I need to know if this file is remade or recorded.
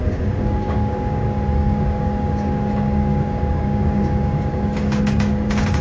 remade